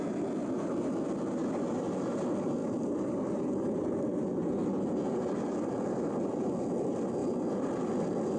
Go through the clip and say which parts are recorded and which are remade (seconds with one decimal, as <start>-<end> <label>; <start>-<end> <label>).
0.0-2.6 recorded; 2.6-4.5 remade; 4.5-7.2 recorded; 7.2-8.0 remade; 8.0-8.4 recorded